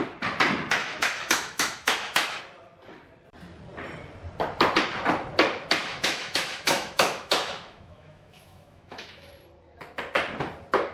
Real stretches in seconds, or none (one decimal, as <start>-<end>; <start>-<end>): 0.0-0.8; 2.4-5.8; 9.3-10.9